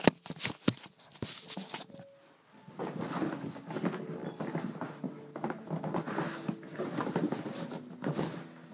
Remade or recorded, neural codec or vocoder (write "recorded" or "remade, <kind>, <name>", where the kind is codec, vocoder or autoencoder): recorded